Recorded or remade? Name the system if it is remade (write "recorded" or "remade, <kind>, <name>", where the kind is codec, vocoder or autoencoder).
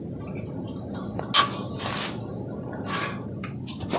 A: recorded